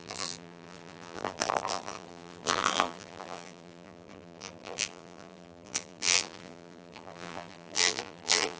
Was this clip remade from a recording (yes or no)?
yes